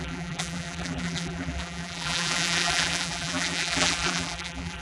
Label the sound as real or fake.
fake